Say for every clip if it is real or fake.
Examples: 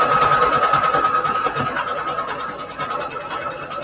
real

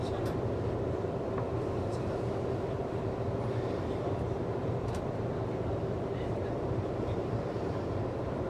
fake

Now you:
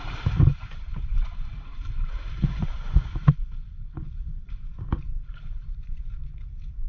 fake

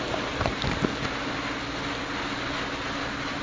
real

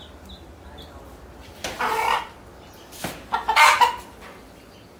real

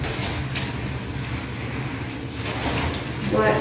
real